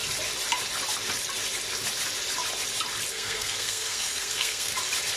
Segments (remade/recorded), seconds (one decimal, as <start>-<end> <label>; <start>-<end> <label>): 0.0-3.1 recorded; 3.1-4.7 remade; 4.7-5.2 recorded